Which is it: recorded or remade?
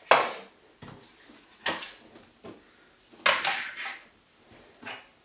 recorded